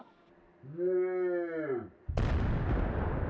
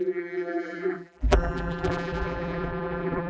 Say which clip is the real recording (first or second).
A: first